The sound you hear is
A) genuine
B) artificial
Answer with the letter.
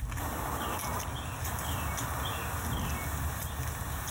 A